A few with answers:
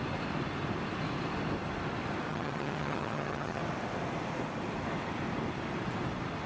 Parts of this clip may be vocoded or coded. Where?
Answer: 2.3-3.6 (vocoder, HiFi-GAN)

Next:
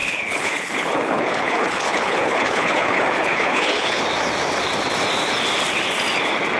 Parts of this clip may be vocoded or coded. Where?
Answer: 0.0-4.0 (codec, HILCodec)

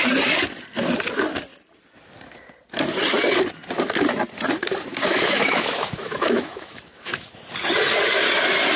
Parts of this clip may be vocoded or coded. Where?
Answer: 4.9-7.4 (autoencoder, DAC-VAE)

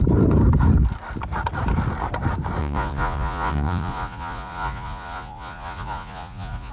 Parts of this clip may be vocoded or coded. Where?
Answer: 2.6-6.7 (vocoder, Vocos)

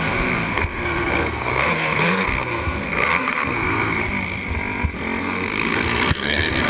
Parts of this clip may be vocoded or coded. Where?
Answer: 0.0-4.0 (codec, SNAC); 5.2-6.7

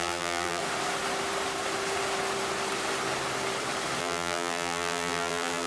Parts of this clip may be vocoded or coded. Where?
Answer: 0.0-0.6 (vocoder, BigVGAN v2); 4.0-5.7